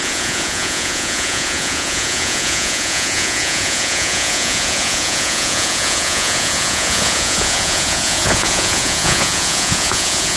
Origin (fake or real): fake